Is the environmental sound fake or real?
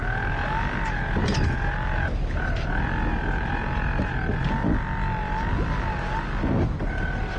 real